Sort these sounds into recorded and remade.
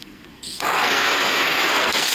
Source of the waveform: remade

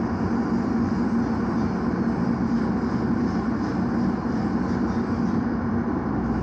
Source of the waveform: recorded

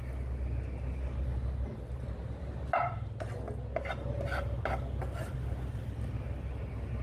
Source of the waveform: recorded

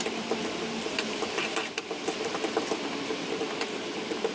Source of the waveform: remade